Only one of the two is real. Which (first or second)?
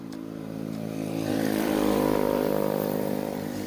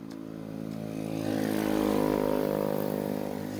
second